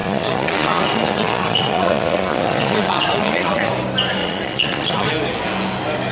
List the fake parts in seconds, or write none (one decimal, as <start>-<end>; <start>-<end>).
0.0-3.7; 4.2-5.1